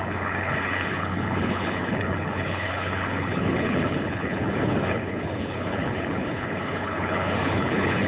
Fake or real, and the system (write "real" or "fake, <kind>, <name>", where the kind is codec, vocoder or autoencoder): fake, codec, HILCodec